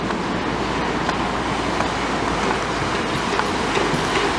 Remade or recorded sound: recorded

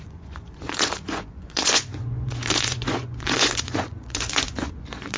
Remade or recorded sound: remade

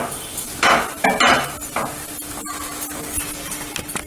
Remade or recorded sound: recorded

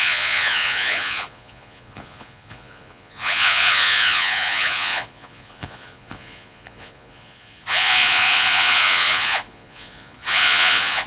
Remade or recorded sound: remade